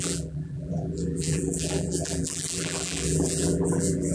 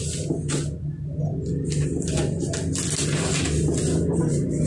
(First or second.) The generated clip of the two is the first